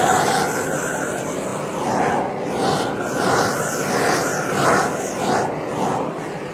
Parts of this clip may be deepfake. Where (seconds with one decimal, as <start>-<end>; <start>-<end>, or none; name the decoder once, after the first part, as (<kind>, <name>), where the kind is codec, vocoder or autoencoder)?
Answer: none